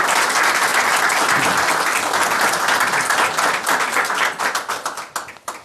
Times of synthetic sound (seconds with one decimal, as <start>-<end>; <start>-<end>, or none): none